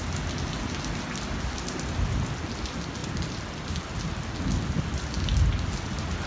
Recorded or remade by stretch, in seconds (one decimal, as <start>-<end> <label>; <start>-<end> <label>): 0.0-6.3 recorded